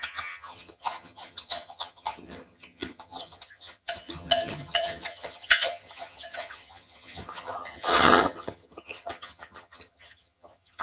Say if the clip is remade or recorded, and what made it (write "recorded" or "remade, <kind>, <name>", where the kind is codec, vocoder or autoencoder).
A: remade, vocoder, HiFi-GAN